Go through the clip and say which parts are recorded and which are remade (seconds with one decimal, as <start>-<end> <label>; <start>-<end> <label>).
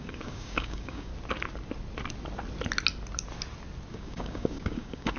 0.0-1.1 remade; 1.1-3.9 recorded; 3.9-5.2 remade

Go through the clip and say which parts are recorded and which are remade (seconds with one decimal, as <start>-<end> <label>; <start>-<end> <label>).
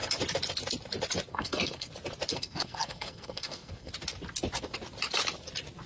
0.0-1.3 recorded; 1.3-1.9 remade; 1.9-2.3 recorded; 2.3-3.9 remade; 3.9-5.9 recorded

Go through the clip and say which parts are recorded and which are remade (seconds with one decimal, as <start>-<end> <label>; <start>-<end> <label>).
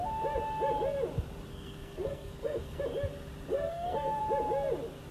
0.0-1.5 recorded; 1.5-2.8 remade; 2.8-3.5 recorded; 3.5-4.2 remade; 4.2-5.1 recorded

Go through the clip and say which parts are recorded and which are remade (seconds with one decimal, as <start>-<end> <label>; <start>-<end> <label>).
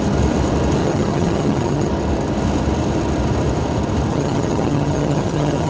0.0-0.8 recorded; 0.8-1.9 remade; 1.9-4.1 recorded; 4.1-5.7 remade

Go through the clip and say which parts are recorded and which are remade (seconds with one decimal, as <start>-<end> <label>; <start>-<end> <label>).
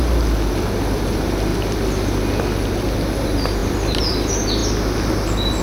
0.0-5.6 recorded